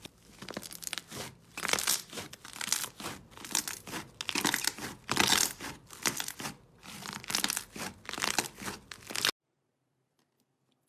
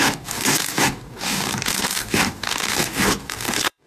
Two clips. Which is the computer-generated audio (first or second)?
second